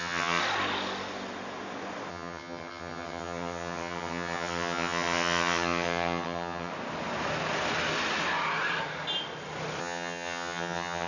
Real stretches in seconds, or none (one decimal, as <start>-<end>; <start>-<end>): 0.4-2.1; 6.7-9.8